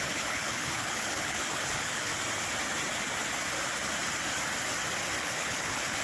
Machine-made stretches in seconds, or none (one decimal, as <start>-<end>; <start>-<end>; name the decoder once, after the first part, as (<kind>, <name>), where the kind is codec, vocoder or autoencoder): 0.0-2.1 (codec, HILCodec); 5.2-6.0